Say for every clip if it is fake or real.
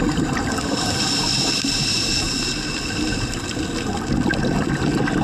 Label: real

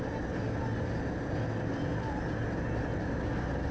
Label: real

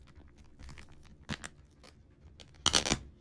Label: real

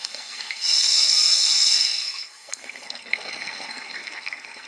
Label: fake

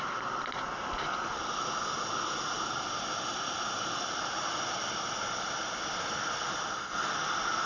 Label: real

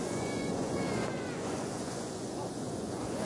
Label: fake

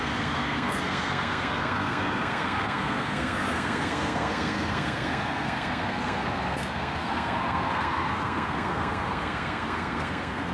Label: fake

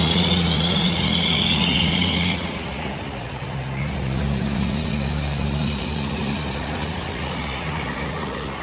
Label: fake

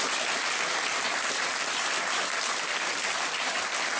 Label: fake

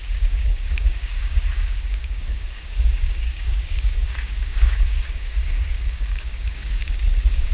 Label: fake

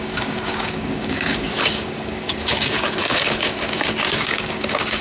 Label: fake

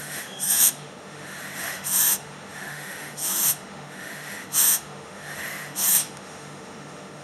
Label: fake